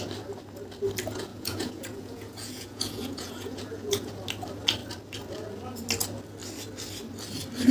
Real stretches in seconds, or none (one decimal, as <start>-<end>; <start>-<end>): 0.0-1.3; 4.1-7.7